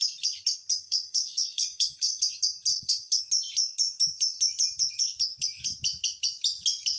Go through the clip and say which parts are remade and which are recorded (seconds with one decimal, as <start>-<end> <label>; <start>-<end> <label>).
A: 0.0-0.8 recorded; 0.8-2.2 remade; 2.2-2.7 recorded; 2.7-3.2 remade; 3.2-7.0 recorded